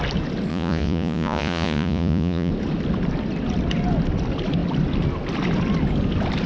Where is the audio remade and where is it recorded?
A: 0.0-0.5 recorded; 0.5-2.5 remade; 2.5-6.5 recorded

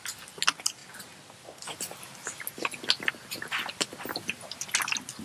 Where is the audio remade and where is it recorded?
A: 0.0-5.2 recorded

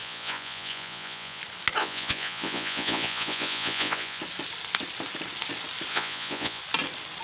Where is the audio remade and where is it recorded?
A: 0.0-1.4 remade; 1.4-1.8 recorded; 1.8-4.2 remade; 4.2-5.9 recorded; 5.9-6.6 remade; 6.6-7.2 recorded

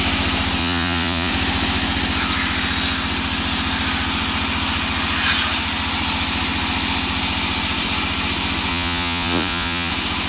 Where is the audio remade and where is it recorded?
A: 0.0-0.6 recorded; 0.6-1.3 remade; 1.3-8.7 recorded; 8.7-9.9 remade; 9.9-10.3 recorded

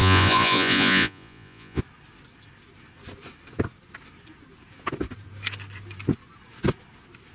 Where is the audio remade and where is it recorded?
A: 0.0-1.8 remade; 1.8-7.3 recorded

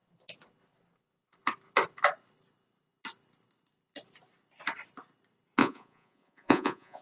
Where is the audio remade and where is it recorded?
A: 0.0-5.6 recorded; 5.6-7.0 remade